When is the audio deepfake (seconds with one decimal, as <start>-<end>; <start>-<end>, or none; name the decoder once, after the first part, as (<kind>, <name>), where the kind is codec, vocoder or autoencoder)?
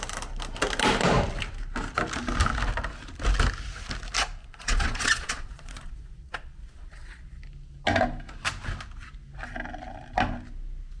4.4-7.4 (vocoder, Vocos)